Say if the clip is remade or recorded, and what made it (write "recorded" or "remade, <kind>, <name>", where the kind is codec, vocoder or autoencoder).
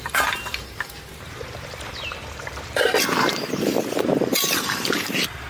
remade, vocoder, BigVGAN v2